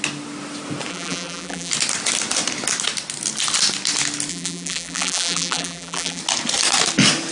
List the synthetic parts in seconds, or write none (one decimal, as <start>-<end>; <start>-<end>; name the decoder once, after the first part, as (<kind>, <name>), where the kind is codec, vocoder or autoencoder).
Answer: 0.9-1.7 (vocoder, BigVGAN v2); 4.3-6.2